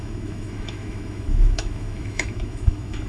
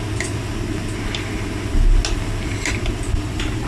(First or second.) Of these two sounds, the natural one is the second